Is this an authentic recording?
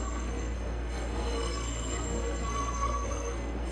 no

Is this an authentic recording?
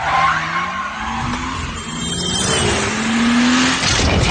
yes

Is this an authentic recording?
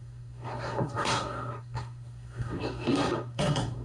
no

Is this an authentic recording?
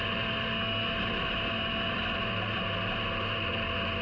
yes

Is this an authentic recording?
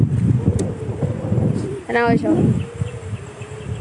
yes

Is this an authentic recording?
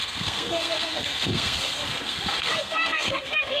no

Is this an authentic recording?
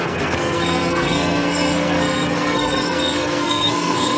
no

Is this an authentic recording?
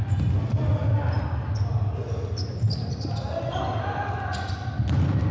yes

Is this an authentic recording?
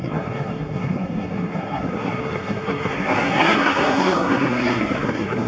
no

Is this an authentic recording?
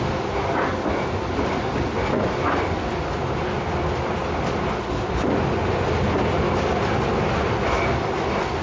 yes